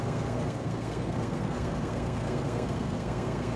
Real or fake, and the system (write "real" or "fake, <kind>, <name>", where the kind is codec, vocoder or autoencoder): fake, codec, SNAC